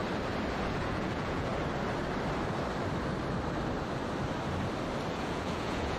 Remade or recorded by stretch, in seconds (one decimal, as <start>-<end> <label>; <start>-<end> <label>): 0.0-0.5 recorded; 0.5-1.5 remade; 1.5-5.1 recorded; 5.1-6.0 remade